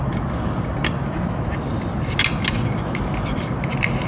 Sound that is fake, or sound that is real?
real